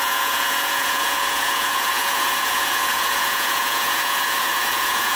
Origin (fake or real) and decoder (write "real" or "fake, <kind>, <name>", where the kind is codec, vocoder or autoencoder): fake, vocoder, Vocos